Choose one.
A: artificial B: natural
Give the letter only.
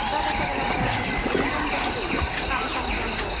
B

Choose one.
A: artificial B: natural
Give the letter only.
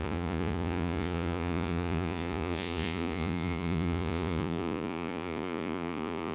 A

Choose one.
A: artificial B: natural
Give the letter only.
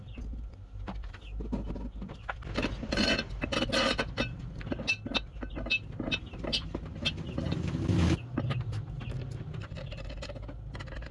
B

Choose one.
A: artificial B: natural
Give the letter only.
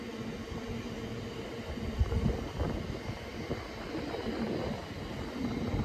B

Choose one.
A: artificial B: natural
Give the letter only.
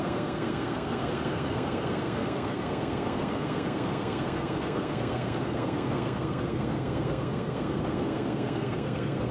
A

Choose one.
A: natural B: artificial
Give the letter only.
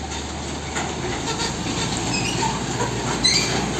A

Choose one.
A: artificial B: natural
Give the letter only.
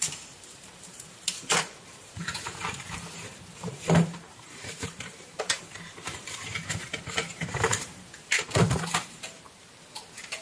A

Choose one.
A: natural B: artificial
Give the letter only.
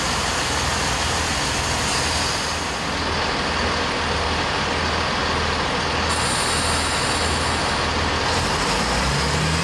A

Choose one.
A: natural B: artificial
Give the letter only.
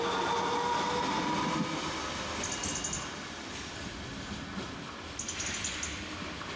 A